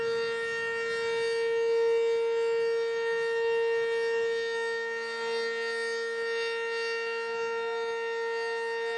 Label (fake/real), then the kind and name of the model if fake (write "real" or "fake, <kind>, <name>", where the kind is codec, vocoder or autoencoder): real